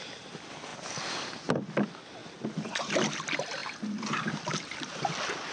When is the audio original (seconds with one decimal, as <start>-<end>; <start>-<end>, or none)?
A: 0.0-2.2; 3.0-5.5